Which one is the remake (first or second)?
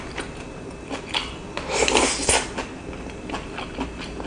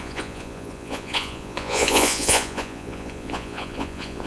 second